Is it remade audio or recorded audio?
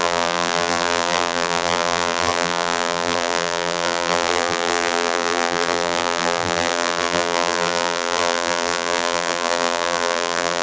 remade